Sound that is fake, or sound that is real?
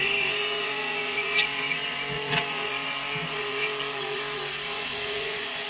fake